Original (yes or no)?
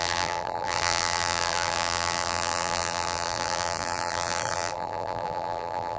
no